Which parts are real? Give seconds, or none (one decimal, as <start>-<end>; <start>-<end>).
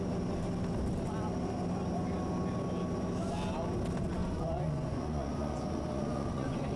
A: 0.0-4.2